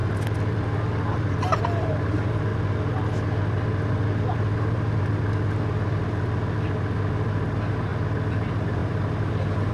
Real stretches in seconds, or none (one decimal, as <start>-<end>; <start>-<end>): 0.0-1.6; 2.5-7.5; 7.9-8.4